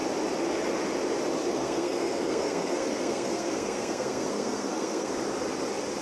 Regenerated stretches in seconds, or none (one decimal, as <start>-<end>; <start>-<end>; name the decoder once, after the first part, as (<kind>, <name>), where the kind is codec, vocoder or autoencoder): 1.5-5.1 (codec, SNAC)